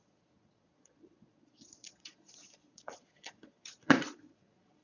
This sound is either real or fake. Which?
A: fake